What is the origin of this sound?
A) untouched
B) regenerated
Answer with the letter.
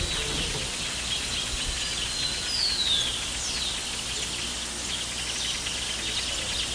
A